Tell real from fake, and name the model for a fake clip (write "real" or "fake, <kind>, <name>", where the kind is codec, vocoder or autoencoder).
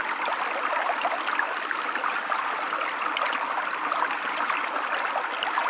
real